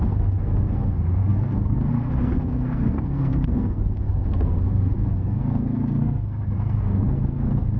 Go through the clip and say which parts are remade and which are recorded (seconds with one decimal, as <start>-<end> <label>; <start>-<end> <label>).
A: 0.0-7.8 remade